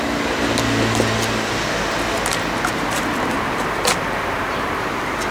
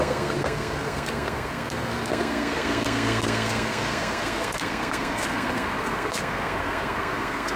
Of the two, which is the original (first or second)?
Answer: first